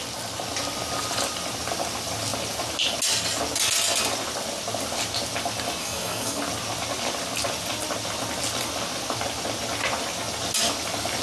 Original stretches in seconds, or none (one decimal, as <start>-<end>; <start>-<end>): 0.0-5.8; 6.4-11.2